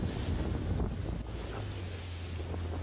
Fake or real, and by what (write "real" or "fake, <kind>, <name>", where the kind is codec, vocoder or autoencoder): real